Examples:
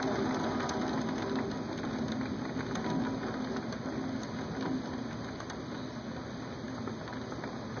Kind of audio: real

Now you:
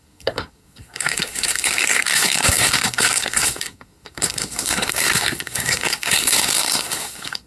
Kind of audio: fake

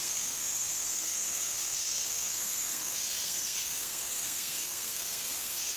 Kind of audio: fake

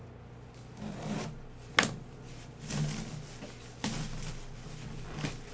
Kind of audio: real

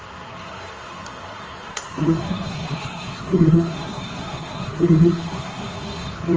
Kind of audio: fake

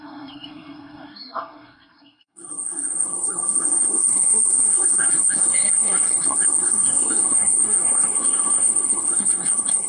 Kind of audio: fake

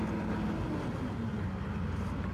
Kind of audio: real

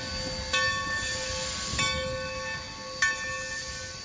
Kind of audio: real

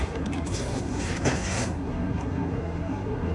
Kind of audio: fake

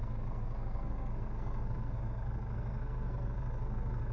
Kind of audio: fake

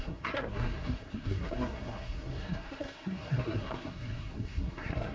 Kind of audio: fake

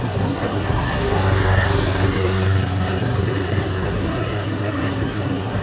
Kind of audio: fake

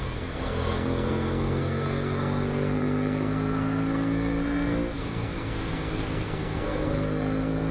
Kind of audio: fake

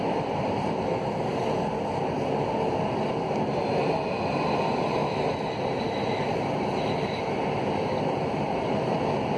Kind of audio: real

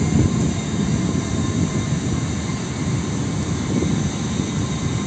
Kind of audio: real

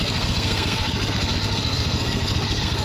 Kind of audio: fake